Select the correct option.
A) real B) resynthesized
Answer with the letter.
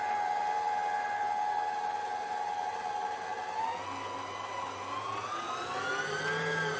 A